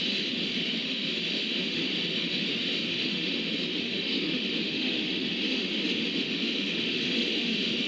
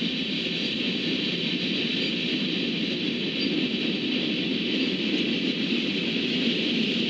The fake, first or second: first